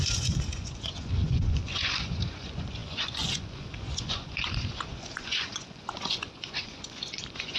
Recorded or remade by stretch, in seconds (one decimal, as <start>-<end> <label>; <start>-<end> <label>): 0.0-7.6 remade